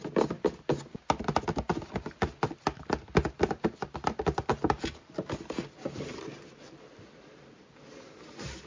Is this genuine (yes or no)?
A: yes